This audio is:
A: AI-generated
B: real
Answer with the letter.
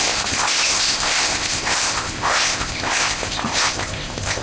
A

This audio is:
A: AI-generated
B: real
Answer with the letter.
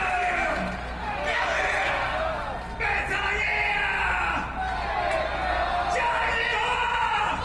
B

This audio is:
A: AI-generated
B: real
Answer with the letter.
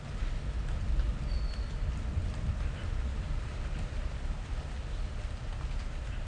B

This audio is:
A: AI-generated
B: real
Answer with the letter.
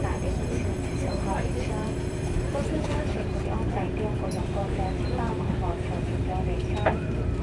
A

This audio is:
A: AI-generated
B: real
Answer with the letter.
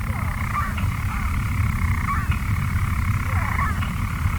A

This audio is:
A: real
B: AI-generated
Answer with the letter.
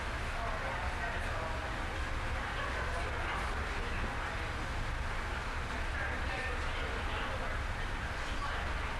A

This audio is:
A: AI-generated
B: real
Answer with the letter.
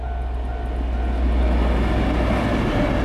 B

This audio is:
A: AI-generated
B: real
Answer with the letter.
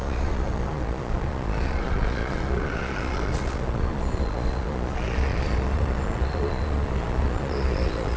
A